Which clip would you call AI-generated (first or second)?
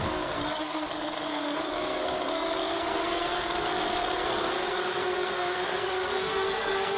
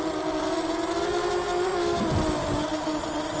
first